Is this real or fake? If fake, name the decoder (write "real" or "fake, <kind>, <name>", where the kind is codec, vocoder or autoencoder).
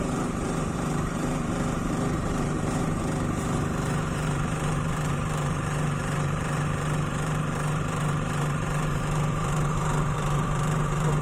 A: fake, vocoder, BigVGAN v2